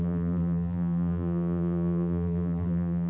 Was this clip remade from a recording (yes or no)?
yes